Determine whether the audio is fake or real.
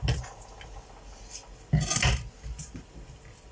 real